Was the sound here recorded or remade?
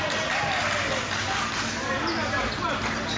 recorded